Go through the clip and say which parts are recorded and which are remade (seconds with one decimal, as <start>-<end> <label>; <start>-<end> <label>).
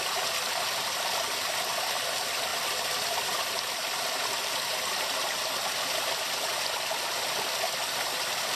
0.0-8.6 recorded